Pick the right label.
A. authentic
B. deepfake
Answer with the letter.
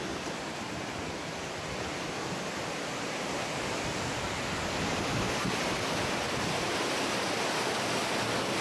B